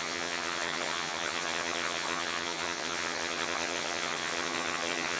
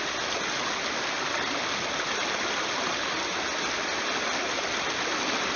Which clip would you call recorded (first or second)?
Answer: second